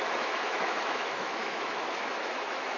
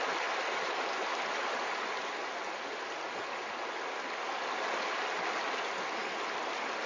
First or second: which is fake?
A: first